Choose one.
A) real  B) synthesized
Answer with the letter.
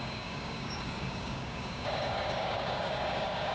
B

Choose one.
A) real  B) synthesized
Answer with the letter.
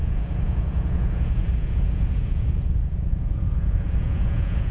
B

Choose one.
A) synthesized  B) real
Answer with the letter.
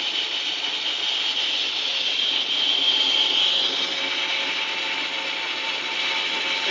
B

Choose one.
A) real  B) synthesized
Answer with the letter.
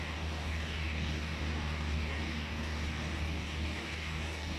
B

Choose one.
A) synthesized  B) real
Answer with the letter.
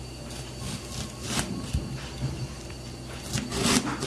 B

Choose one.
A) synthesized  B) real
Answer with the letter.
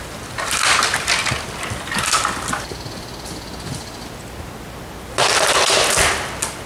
B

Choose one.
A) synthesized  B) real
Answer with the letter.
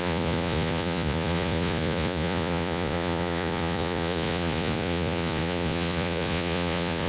A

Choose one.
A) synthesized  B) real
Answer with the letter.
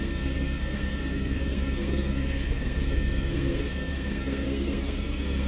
A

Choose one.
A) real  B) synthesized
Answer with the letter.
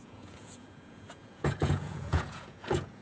B